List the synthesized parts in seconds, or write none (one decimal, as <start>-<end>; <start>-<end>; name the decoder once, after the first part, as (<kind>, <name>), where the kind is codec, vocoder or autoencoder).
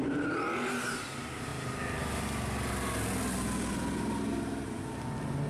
none